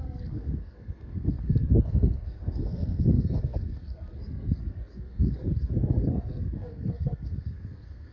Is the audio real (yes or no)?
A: no